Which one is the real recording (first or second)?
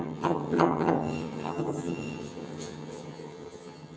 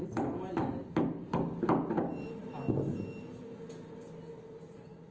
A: second